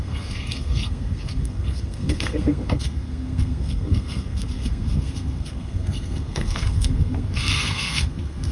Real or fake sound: fake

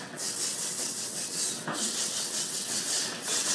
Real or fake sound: fake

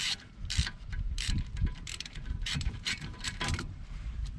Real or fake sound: fake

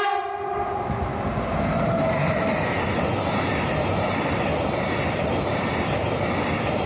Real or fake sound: real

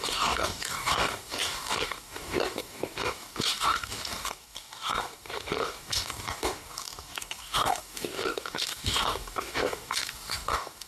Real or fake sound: fake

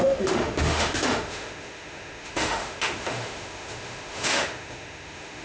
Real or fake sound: fake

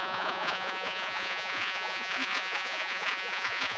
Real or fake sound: fake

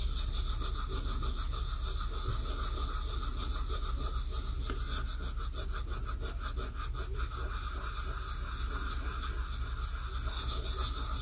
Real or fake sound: real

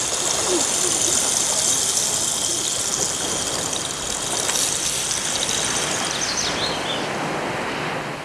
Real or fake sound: real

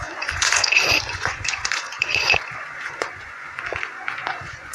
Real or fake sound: fake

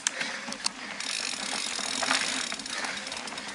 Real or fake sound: real